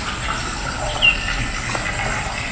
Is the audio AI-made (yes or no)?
no